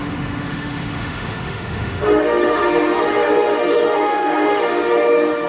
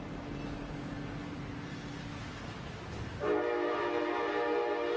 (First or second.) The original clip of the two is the second